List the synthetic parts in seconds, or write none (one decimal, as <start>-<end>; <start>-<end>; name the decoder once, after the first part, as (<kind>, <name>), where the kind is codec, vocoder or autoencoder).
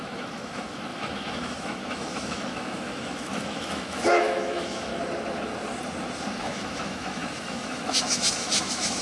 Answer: 0.0-4.9 (autoencoder, DAC-VAE); 6.4-9.0